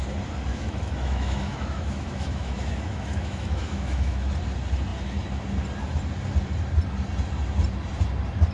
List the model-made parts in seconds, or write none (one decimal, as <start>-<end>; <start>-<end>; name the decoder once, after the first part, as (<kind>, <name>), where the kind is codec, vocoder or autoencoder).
0.5-4.3 (autoencoder, DAC-VAE)